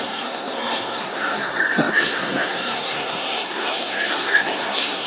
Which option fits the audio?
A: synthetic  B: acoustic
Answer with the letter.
A